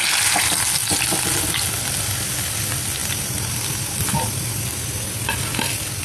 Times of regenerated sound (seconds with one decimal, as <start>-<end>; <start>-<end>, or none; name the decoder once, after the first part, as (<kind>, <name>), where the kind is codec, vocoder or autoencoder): none